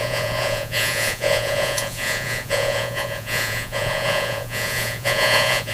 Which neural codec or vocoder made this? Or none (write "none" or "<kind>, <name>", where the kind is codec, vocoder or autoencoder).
vocoder, Vocos